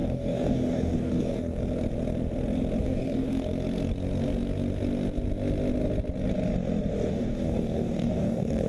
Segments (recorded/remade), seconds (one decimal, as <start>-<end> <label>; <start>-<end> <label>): 0.0-1.6 remade; 1.6-2.8 recorded; 2.8-3.5 remade; 3.5-7.1 recorded; 7.1-8.7 remade